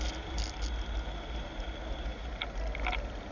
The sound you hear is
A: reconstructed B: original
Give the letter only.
B